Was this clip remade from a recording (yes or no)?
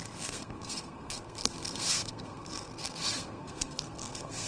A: yes